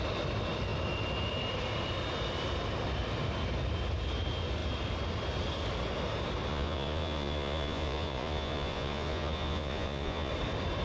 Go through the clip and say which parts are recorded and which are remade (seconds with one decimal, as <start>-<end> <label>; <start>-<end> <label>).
0.0-6.5 recorded; 6.5-10.3 remade; 10.3-10.8 recorded